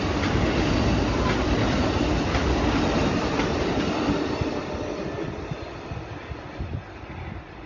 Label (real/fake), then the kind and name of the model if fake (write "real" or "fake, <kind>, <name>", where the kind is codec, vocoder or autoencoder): real